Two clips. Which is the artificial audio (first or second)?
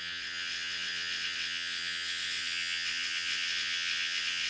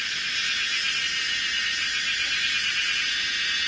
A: first